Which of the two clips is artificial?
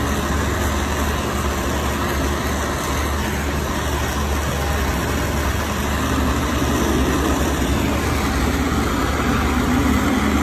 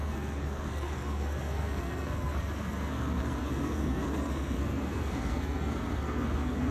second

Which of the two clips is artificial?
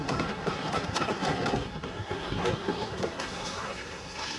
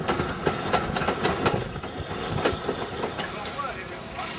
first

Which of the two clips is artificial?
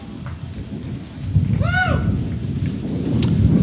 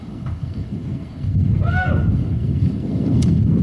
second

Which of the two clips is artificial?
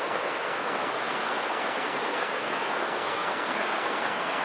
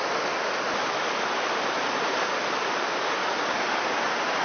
first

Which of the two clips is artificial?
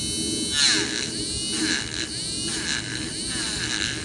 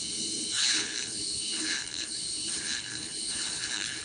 second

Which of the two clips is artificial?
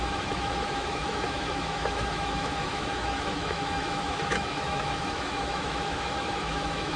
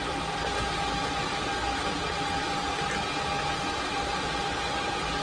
first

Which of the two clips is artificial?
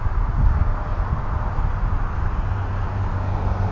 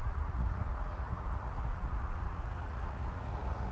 second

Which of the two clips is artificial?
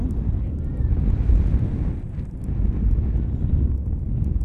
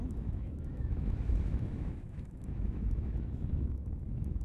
second